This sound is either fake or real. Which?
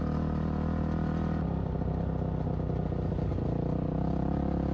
real